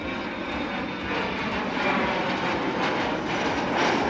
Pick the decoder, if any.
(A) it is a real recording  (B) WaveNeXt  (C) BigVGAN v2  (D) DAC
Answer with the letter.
A